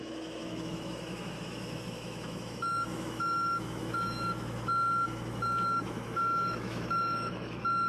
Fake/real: fake